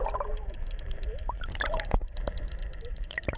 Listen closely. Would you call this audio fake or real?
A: fake